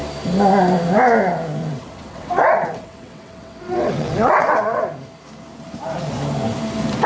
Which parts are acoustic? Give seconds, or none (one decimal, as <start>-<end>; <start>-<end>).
0.0-1.6; 4.8-7.1